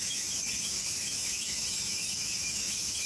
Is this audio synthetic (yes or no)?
yes